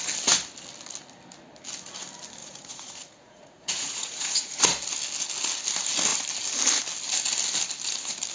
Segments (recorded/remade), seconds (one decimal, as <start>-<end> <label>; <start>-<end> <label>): 0.0-2.4 recorded; 2.4-4.6 remade; 4.6-8.3 recorded